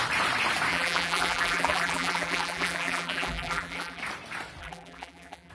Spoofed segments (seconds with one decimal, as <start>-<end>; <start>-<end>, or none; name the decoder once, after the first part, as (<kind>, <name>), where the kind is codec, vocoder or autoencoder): 0.7-4.0 (vocoder, BigVGAN v2); 4.6-5.5